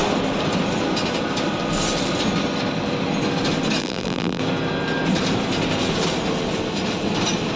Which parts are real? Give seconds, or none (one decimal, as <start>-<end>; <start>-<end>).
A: 0.0-3.8; 4.4-7.6